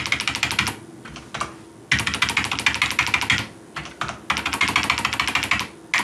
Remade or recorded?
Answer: recorded